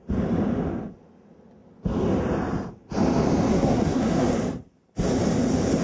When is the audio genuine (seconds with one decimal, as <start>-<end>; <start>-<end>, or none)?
0.0-3.5; 4.4-5.8